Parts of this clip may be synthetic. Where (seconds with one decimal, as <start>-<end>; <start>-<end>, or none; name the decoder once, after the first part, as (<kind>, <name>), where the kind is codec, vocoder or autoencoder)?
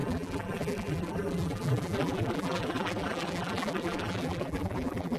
0.0-5.2 (vocoder, BigVGAN v2)